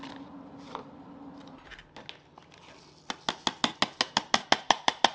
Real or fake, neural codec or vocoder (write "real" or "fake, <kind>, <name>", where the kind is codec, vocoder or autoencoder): real